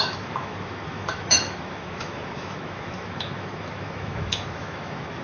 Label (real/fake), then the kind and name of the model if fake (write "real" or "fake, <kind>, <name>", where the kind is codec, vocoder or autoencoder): fake, autoencoder, DAC-VAE